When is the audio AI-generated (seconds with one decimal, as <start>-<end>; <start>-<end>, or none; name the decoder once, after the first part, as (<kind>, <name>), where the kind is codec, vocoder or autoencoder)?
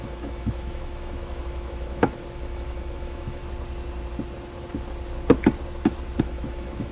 0.0-3.4 (autoencoder, DAC-VAE); 6.2-6.9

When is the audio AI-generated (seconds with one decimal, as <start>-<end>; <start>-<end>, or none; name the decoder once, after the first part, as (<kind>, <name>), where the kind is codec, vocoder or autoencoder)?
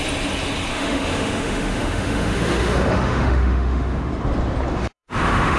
0.7-4.1 (autoencoder, DAC-VAE); 4.7-5.6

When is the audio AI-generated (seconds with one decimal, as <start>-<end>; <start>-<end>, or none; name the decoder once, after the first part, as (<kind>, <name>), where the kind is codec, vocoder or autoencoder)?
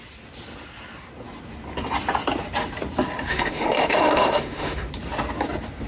3.3-4.9 (autoencoder, DAC-VAE)